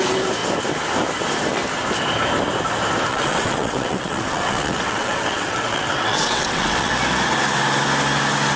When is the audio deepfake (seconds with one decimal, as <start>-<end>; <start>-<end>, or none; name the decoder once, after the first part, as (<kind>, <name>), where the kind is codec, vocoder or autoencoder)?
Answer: 3.1-6.9 (vocoder, WaveNeXt)